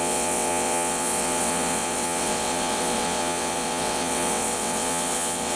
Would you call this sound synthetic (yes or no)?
yes